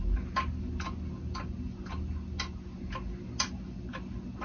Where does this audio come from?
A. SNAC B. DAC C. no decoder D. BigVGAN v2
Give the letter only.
C